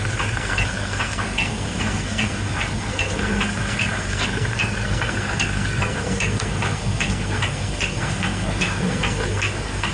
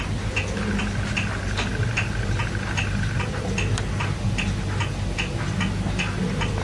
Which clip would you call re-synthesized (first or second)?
first